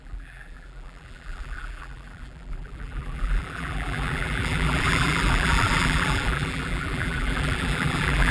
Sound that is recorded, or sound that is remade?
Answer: remade